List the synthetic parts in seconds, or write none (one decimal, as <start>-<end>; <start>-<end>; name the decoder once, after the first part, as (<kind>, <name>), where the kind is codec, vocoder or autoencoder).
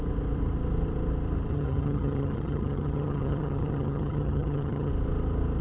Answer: 1.5-4.9 (vocoder, HiFi-GAN)